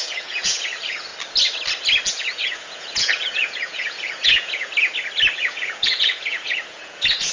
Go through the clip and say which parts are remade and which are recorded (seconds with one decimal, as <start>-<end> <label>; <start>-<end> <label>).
0.0-1.1 remade; 1.1-2.1 recorded; 2.1-4.7 remade; 4.7-5.4 recorded; 5.4-7.3 remade